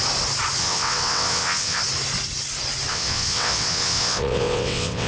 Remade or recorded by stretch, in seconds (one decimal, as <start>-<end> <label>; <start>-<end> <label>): 0.0-0.6 recorded; 0.6-1.8 remade; 1.8-2.9 recorded; 2.9-5.1 remade